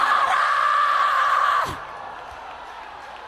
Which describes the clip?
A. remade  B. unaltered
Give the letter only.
A